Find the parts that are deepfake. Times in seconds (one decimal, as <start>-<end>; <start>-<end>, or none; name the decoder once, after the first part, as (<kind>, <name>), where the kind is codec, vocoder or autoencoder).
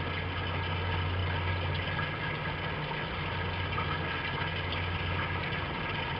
none